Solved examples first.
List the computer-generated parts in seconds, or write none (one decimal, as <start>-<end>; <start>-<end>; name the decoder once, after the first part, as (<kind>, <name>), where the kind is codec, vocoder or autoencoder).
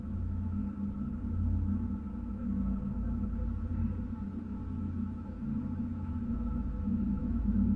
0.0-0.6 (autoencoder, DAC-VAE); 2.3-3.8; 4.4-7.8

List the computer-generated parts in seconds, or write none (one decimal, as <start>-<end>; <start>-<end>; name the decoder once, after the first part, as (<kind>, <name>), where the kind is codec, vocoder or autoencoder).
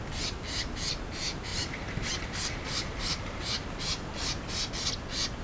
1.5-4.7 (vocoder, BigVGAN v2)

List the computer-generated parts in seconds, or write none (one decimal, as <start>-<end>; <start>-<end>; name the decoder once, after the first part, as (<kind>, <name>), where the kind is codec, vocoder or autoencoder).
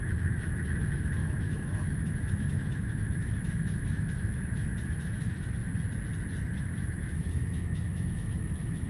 0.0-5.6 (autoencoder, DAC-VAE); 6.6-8.9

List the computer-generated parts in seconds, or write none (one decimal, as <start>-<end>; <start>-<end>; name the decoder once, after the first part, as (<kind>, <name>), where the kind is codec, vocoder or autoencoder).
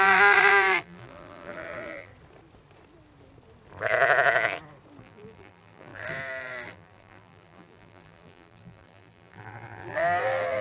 0.0-2.1 (vocoder, BigVGAN v2); 5.0-10.6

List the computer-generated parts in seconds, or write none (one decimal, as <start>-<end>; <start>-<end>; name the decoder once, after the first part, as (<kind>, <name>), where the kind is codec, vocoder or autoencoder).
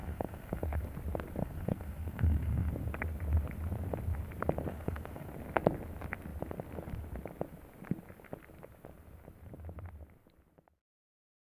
0.0-0.8 (codec, SNAC); 1.4-2.7; 4.7-5.3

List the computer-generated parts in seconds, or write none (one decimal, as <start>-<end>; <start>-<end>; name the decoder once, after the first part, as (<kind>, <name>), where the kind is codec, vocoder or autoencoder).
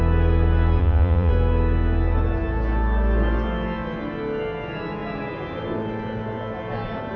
0.8-1.3 (vocoder, Vocos)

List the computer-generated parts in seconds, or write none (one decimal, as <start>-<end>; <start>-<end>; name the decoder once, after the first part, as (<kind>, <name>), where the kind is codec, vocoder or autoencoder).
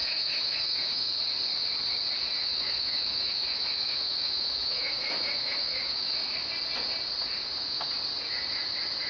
0.0-1.1 (autoencoder, DAC-VAE); 2.4-6.5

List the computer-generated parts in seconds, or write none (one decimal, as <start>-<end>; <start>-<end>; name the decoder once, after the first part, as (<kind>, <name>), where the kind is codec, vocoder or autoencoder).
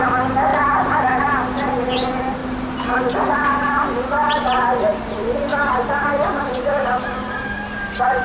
none